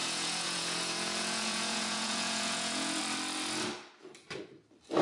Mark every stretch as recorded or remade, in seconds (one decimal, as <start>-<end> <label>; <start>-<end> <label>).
0.0-3.0 remade; 3.0-5.0 recorded